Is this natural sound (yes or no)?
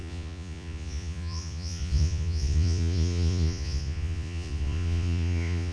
no